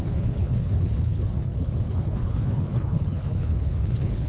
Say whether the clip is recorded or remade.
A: remade